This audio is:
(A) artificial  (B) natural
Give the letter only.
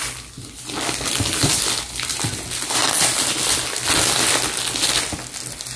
B